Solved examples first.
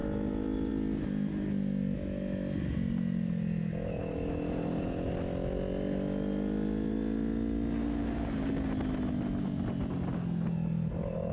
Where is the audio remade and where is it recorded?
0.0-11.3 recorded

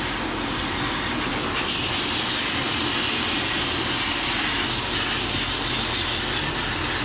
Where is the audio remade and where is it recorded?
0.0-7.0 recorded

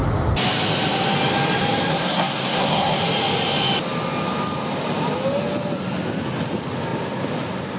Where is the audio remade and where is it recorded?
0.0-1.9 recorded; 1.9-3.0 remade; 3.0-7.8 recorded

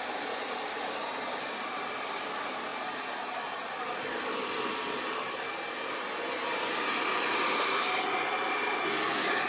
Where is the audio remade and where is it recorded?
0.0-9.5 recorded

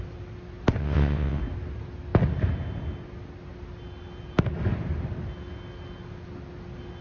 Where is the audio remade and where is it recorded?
0.0-0.8 recorded; 0.8-1.4 remade; 1.4-7.0 recorded

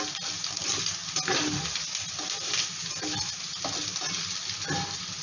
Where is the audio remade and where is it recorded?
0.0-5.2 recorded

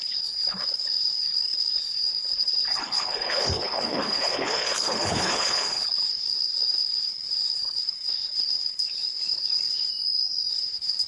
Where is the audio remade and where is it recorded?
0.0-9.9 remade; 9.9-10.5 recorded; 10.5-11.1 remade

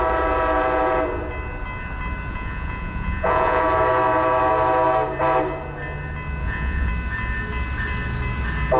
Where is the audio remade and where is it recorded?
0.0-2.3 recorded; 2.3-3.6 remade; 3.6-6.4 recorded; 6.4-6.9 remade; 6.9-8.8 recorded